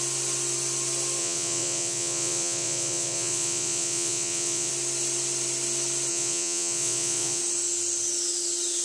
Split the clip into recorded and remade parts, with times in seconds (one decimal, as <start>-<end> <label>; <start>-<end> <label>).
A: 0.0-1.2 recorded; 1.2-4.7 remade; 4.7-6.1 recorded; 6.1-7.4 remade; 7.4-8.8 recorded